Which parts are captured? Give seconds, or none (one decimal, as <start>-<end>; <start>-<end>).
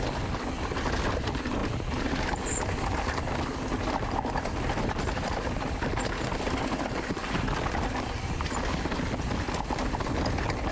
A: 0.0-10.7